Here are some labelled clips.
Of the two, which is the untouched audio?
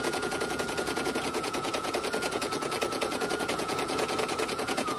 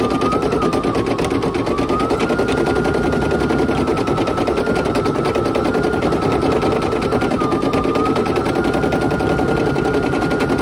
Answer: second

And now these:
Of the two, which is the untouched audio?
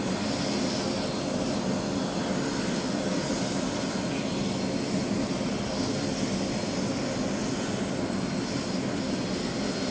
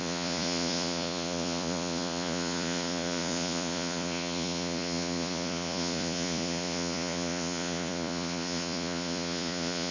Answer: first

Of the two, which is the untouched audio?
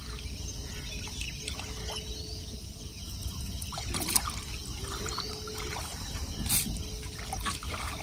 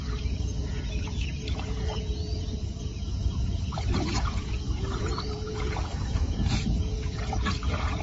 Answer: first